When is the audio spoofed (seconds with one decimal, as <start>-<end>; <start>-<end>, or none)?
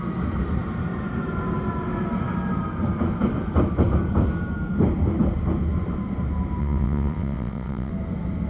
6.6-7.9